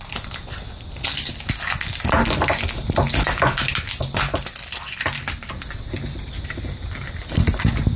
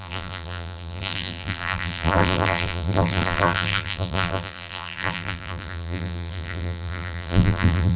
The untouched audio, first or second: first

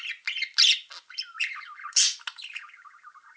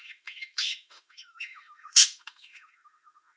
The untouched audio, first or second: first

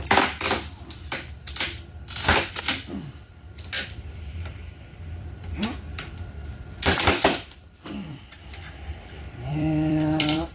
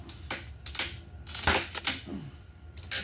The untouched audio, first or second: second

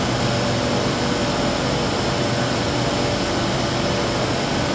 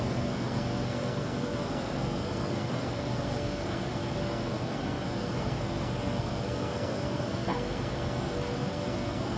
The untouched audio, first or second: first